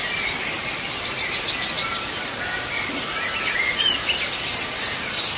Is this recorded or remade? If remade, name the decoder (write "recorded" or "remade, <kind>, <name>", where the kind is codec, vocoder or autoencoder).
recorded